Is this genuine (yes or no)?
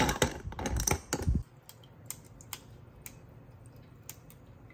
yes